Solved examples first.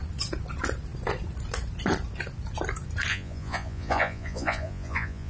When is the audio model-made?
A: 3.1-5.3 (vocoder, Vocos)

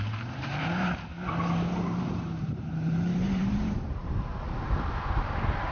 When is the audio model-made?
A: 0.0-1.1 (vocoder, BigVGAN v2); 2.0-4.0; 4.9-5.7

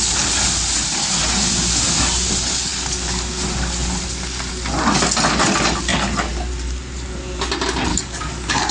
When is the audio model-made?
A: 7.9-8.7 (codec, DAC)